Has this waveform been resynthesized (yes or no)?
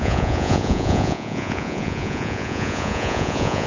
yes